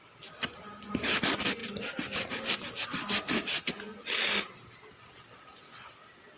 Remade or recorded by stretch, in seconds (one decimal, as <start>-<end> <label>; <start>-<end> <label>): 0.0-6.4 recorded